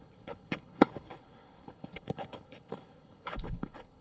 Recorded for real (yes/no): no